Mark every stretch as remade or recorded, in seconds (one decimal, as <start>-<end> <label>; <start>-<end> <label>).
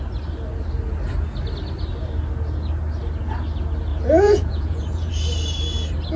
0.0-3.9 recorded; 3.9-5.1 remade; 5.1-6.2 recorded